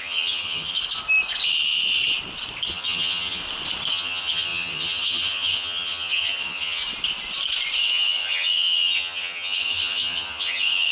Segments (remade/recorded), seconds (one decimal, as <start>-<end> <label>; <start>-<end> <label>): 0.0-0.8 remade; 0.8-2.7 recorded; 2.7-3.4 remade; 3.4-3.9 recorded; 3.9-6.8 remade; 6.8-7.8 recorded; 7.8-10.9 remade